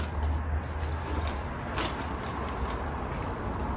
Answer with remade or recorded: recorded